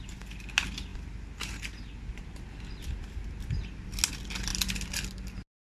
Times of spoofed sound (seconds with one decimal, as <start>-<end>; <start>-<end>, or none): none